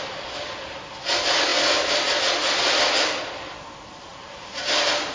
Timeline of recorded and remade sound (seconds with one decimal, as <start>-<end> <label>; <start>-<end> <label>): 0.0-4.1 recorded; 4.1-5.1 remade